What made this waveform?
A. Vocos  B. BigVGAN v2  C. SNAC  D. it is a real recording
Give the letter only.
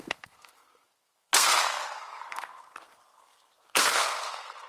C